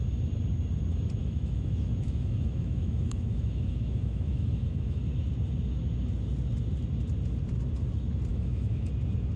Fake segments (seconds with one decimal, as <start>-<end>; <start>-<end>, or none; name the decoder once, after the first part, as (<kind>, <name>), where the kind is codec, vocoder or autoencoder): 1.2-5.0 (autoencoder, DAC-VAE); 8.3-8.9